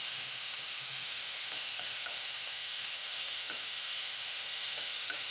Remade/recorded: remade